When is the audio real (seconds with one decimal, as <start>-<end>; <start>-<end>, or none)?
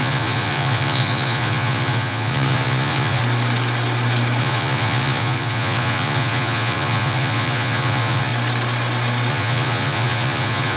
3.2-4.4; 8.3-9.3